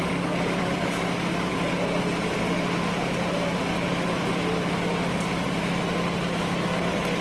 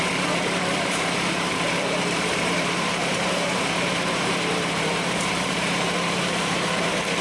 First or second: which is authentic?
first